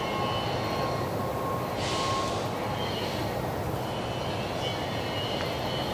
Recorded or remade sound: recorded